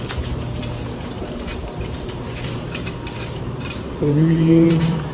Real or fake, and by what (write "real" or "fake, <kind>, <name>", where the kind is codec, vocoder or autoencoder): fake, vocoder, BigVGAN v2